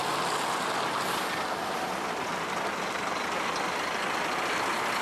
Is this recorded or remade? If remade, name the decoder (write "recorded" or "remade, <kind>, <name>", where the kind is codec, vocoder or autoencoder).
recorded